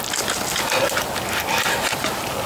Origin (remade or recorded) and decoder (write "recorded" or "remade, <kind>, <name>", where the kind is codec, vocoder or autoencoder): recorded